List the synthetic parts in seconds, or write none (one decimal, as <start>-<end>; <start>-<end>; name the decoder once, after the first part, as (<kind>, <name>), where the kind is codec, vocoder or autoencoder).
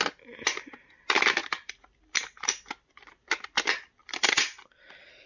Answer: 1.4-3.1 (vocoder, BigVGAN v2); 4.0-5.3